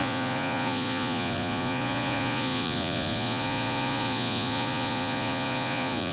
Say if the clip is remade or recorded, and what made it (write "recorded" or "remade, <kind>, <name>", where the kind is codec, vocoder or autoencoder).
remade, vocoder, Vocos